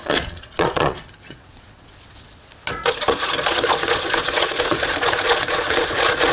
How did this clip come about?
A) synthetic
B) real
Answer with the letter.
A